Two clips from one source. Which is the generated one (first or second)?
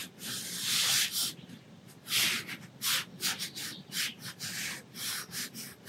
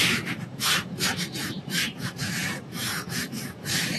second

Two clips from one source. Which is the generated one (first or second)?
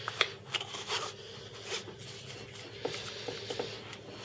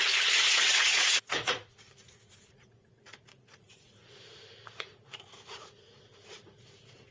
second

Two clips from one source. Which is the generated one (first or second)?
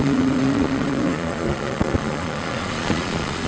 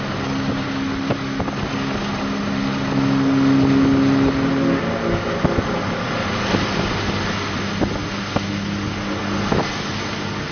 first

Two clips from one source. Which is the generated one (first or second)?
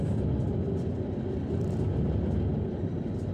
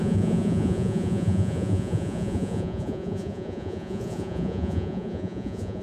second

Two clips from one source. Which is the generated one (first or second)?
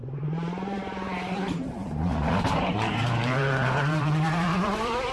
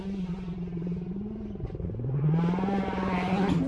first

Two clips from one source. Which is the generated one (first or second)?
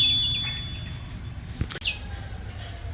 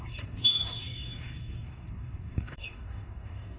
second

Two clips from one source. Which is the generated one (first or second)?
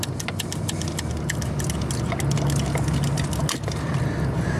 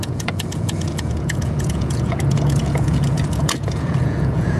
second